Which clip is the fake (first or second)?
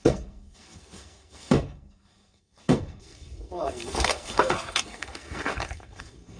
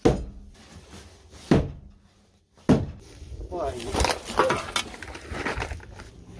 first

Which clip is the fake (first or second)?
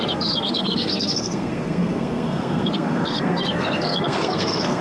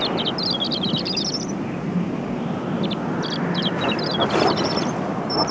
first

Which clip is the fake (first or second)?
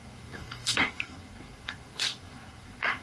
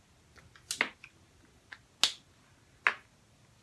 first